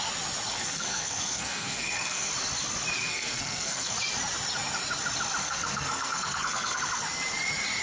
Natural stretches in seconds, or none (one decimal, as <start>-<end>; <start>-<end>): 0.0-0.5; 2.3-3.0; 3.9-5.4; 6.8-7.8